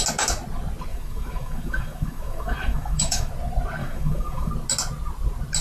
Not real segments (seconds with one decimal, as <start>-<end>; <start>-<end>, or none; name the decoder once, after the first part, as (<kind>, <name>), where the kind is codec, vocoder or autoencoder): 0.9-3.3 (autoencoder, DAC-VAE); 3.8-4.5